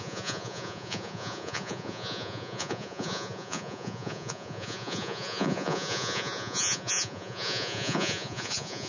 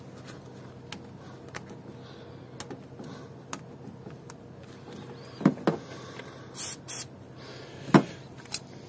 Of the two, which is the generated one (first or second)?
first